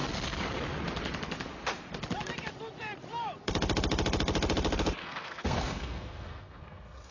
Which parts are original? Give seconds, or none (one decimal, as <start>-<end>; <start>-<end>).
0.0-5.0